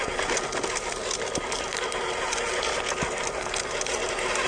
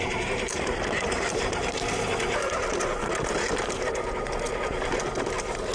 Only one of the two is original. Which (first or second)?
first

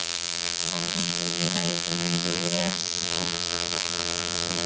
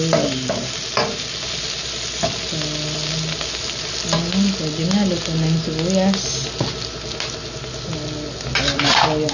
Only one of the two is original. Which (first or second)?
second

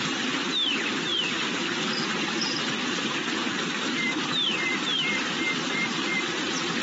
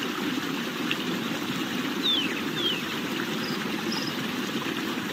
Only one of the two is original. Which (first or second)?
first